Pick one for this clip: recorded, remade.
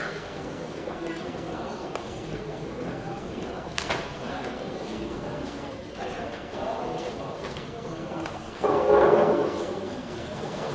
remade